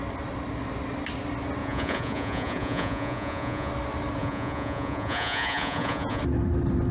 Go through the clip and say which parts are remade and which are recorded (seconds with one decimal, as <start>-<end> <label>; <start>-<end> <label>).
0.0-1.6 recorded; 1.6-3.7 remade; 3.7-4.2 recorded; 4.2-6.2 remade; 6.2-6.9 recorded